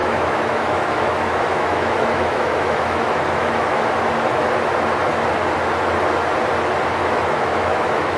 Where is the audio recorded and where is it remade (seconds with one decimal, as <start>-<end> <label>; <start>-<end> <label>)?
0.0-3.9 remade; 3.9-7.0 recorded; 7.0-8.2 remade